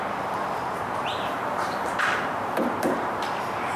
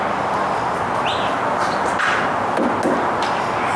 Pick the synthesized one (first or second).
first